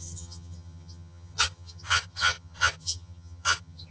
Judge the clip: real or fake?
fake